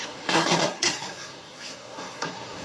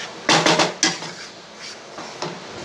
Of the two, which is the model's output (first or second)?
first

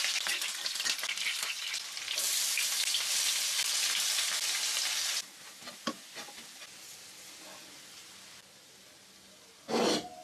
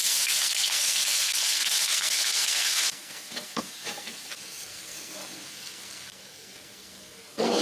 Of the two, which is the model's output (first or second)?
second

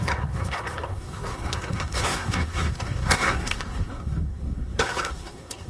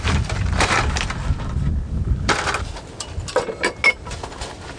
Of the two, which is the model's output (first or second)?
first